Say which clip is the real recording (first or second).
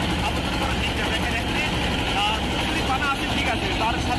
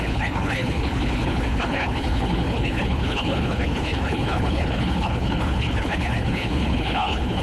first